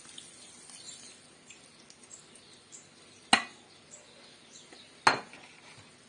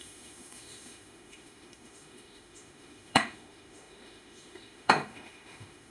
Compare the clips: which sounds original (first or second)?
first